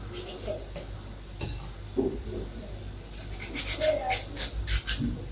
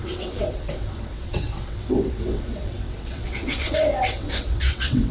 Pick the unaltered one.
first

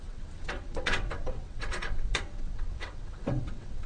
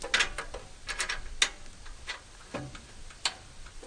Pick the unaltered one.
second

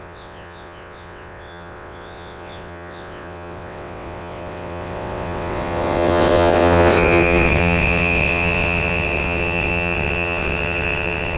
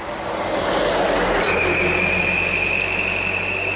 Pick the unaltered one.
second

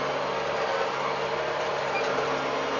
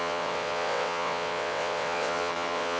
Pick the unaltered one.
first